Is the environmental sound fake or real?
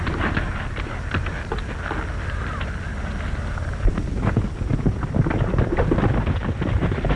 real